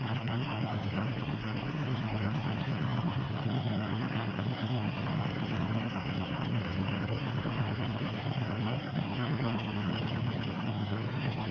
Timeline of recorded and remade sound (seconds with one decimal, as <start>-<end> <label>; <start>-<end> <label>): 0.0-9.9 remade; 9.9-10.5 recorded; 10.5-11.5 remade